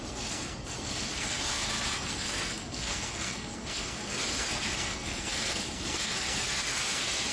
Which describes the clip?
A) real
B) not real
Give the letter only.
B